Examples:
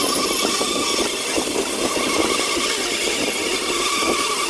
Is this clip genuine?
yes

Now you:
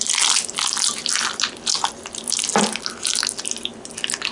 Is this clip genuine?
yes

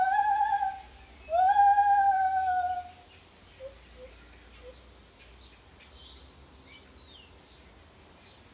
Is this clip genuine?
yes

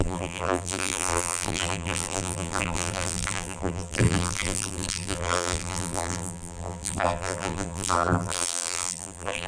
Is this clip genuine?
no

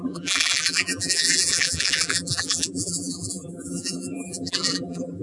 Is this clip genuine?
no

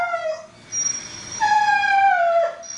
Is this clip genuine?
yes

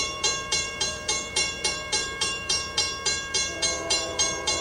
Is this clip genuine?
no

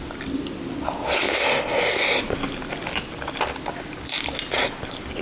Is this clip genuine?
yes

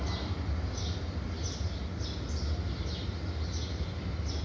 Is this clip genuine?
yes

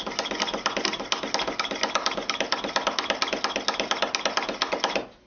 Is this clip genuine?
yes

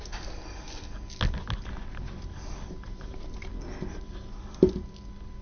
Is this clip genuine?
yes